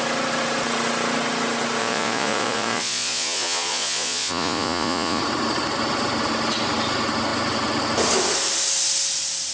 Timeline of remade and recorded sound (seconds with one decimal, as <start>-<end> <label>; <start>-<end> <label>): 0.0-1.8 recorded; 1.8-5.2 remade; 5.2-9.5 recorded